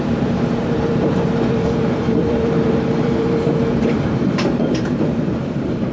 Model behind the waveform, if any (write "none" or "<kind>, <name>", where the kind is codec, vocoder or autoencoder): vocoder, BigVGAN v2